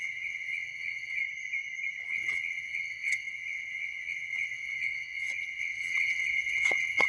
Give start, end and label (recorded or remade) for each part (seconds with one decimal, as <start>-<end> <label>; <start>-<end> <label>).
0.0-1.2 remade; 1.2-2.1 recorded; 2.1-7.1 remade